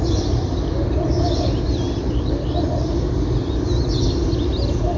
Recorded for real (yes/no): yes